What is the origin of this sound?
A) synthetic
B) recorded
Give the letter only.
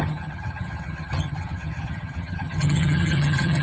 A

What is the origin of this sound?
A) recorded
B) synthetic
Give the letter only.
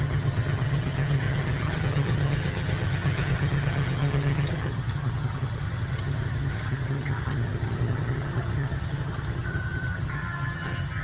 B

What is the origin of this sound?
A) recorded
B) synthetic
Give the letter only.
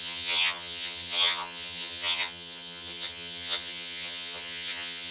B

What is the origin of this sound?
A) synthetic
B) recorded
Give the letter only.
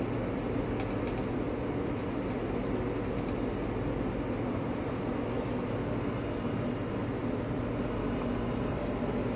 B